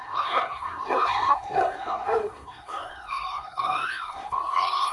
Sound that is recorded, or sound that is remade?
remade